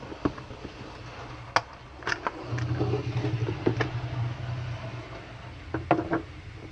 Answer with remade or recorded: recorded